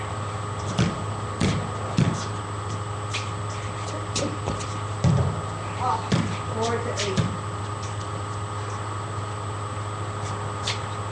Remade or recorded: recorded